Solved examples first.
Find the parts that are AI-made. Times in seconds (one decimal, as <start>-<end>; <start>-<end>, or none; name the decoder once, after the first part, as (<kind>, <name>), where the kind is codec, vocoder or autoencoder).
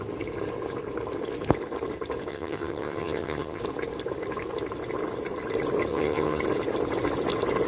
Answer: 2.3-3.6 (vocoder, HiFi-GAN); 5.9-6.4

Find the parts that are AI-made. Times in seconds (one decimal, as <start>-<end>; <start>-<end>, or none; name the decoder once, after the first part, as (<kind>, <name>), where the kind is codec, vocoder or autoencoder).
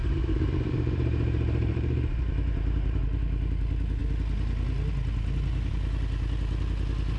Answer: 0.0-3.0 (vocoder, BigVGAN v2)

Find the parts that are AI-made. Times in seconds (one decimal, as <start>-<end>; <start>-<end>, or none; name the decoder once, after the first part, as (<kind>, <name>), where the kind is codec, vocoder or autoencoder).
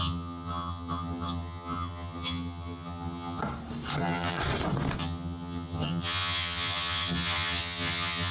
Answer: 0.0-3.4 (vocoder, HiFi-GAN); 4.0-4.4; 5.0-8.3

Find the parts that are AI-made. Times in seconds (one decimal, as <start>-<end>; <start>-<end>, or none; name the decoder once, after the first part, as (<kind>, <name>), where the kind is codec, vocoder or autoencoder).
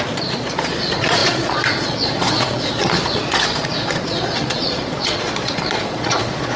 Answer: 0.0-6.6 (vocoder, Vocos)